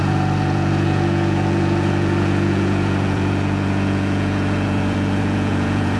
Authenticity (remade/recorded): remade